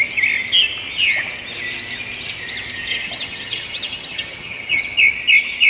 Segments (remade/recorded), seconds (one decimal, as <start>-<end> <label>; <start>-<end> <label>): 0.0-2.9 recorded; 2.9-4.8 remade; 4.8-5.7 recorded

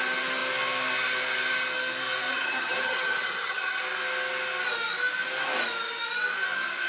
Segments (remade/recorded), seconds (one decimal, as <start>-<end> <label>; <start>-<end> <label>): 0.0-2.3 recorded; 2.3-3.8 remade; 3.8-6.9 recorded

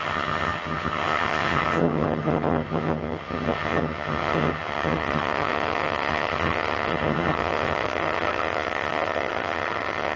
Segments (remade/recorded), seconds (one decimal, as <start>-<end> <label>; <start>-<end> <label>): 0.0-10.2 remade

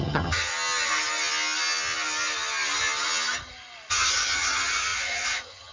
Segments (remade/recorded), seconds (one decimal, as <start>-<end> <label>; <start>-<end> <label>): 0.0-0.5 remade; 0.5-3.9 recorded; 3.9-5.7 remade

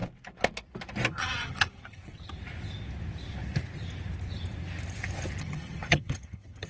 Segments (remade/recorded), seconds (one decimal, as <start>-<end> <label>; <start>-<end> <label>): 0.0-1.1 recorded; 1.1-2.0 remade; 2.0-5.4 recorded; 5.4-6.7 remade